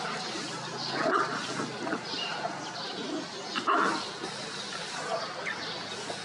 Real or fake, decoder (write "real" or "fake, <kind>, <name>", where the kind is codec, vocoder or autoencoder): real